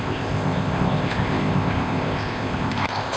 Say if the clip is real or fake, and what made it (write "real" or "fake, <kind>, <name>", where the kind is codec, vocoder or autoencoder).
fake, codec, ZipCodec